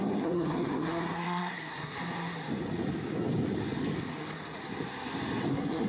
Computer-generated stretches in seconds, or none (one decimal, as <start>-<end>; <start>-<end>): 0.0-2.0; 5.5-5.9